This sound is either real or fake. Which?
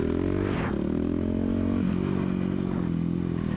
real